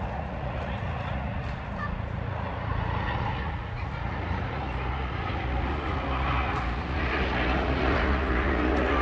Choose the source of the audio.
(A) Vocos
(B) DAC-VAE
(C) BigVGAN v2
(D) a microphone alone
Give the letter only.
A